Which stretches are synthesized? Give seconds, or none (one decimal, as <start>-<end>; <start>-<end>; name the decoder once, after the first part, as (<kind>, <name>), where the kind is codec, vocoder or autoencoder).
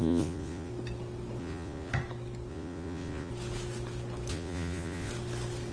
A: 0.0-0.7 (vocoder, Vocos); 1.4-1.9; 2.5-3.3; 4.3-5.1